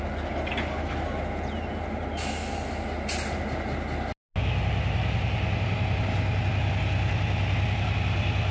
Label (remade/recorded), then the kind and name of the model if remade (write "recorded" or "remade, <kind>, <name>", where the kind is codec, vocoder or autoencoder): recorded